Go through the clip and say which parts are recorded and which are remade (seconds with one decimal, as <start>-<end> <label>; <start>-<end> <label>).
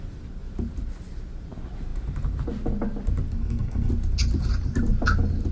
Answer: 0.0-3.4 recorded; 3.4-3.9 remade; 3.9-5.5 recorded